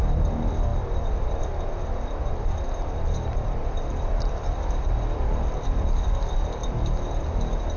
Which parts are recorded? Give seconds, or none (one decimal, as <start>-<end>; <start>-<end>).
none